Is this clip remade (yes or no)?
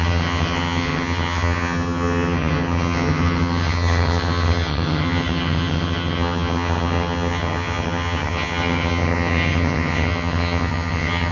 yes